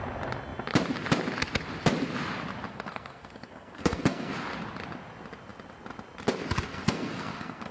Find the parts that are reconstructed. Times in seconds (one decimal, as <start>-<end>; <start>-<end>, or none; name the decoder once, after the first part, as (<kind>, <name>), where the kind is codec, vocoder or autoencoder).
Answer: 2.7-4.3 (codec, SNAC); 6.7-7.7